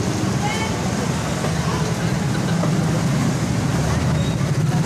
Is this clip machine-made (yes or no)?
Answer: no